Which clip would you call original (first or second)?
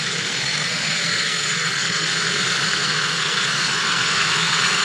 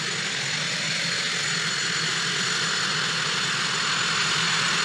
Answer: second